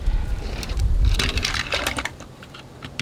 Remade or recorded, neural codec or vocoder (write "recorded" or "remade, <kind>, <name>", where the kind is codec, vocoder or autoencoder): remade, vocoder, BigVGAN v2